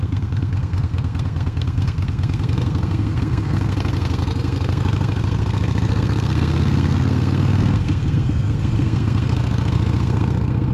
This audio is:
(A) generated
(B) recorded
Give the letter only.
A